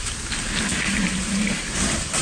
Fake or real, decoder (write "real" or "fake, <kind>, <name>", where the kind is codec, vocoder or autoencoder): real